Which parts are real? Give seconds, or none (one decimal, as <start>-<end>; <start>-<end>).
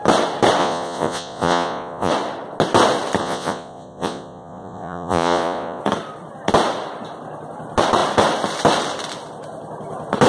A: 0.0-0.6; 2.1-3.2; 5.8-10.3